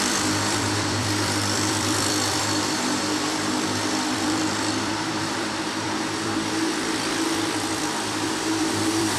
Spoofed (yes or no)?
yes